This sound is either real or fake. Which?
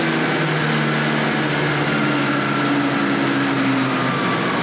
real